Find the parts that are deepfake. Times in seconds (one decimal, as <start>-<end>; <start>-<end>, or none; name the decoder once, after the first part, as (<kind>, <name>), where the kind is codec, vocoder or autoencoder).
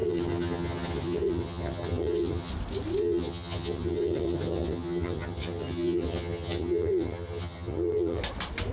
0.0-2.5 (vocoder, HiFi-GAN); 3.0-8.2